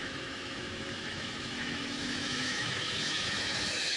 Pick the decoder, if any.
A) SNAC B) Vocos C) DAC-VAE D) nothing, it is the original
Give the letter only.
C